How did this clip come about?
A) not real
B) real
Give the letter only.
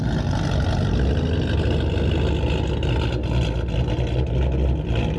B